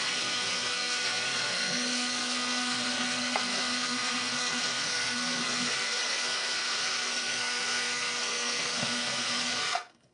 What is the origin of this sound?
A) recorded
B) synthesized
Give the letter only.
B